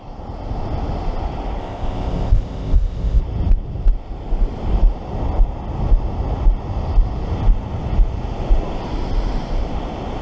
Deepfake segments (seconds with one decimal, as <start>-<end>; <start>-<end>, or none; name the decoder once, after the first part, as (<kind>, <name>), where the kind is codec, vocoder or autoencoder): 1.6-3.2 (codec, ZipCodec)